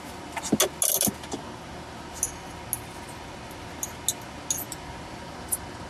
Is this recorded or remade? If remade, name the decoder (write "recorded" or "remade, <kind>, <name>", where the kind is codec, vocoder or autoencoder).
recorded